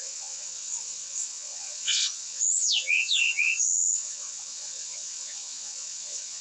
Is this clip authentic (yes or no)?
no